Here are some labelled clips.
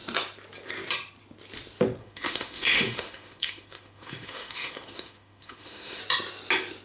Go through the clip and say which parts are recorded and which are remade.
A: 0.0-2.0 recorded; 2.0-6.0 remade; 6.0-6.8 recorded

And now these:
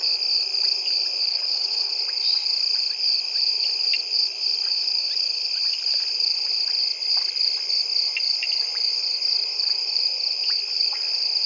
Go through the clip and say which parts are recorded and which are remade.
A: 0.0-1.3 recorded; 1.3-1.9 remade; 1.9-11.5 recorded

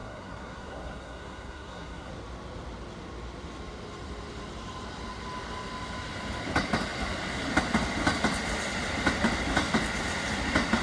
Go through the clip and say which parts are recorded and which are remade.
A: 0.0-2.1 remade; 2.1-10.8 recorded